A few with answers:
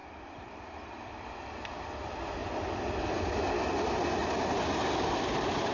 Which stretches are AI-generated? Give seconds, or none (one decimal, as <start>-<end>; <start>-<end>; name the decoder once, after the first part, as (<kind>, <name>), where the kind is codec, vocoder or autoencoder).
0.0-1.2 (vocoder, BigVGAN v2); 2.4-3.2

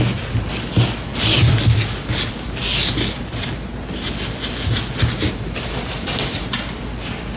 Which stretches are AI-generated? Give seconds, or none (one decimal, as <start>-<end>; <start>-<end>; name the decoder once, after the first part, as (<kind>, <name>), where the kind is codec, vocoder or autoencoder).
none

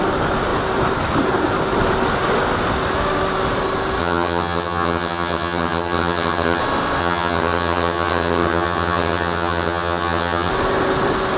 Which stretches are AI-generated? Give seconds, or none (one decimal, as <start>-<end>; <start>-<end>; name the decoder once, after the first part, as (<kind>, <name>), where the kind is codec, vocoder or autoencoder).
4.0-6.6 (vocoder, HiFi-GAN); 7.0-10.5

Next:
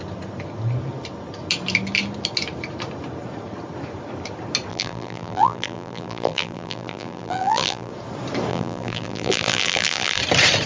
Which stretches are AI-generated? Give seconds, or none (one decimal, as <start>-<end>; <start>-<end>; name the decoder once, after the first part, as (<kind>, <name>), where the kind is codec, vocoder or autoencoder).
4.7-7.9 (vocoder, BigVGAN v2); 8.5-10.2

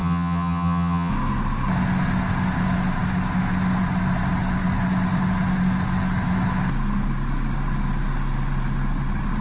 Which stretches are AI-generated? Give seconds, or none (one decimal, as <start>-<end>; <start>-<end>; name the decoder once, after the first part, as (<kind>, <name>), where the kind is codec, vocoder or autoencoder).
0.0-1.1 (vocoder, HiFi-GAN)

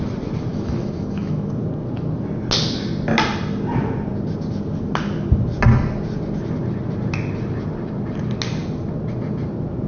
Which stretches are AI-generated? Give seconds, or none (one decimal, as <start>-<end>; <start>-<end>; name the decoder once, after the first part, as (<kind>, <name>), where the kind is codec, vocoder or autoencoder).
0.5-1.5 (autoencoder, DAC-VAE)

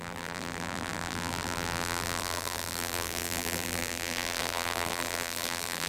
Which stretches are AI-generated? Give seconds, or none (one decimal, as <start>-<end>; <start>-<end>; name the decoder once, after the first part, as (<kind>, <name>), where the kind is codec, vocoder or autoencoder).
0.0-5.9 (vocoder, BigVGAN v2)

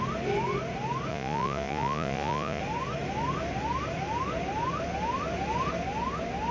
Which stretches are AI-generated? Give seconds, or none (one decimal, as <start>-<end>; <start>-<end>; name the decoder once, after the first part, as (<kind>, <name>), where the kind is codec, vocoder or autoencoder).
1.1-2.6 (vocoder, Vocos)